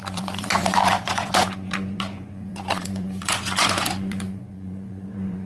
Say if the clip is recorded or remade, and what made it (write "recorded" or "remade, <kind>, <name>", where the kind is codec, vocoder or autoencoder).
remade, vocoder, Vocos